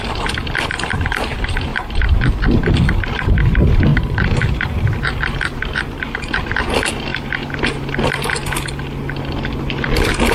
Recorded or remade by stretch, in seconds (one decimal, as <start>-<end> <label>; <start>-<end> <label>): 0.0-1.7 recorded; 1.7-2.3 remade; 2.3-3.9 recorded; 3.9-4.9 remade; 4.9-10.3 recorded